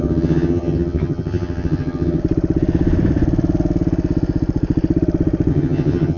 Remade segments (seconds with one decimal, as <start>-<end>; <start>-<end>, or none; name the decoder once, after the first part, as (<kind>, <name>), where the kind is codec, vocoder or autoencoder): 0.0-2.2 (vocoder, HiFi-GAN); 5.5-6.2